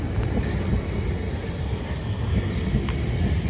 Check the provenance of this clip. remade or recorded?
recorded